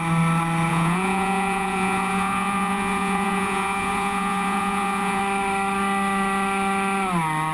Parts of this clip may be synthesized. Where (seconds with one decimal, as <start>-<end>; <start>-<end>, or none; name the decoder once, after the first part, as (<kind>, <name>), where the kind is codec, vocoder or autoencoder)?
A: 0.7-5.2 (vocoder, Vocos)